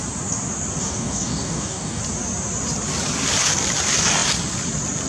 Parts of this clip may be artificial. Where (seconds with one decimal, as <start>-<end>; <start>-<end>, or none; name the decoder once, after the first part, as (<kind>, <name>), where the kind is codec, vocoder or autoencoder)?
0.8-2.0 (codec, DAC)